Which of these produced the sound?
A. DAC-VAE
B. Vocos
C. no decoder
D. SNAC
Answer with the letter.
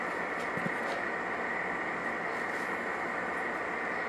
C